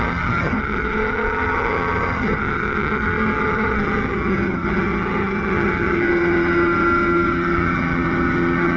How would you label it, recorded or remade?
remade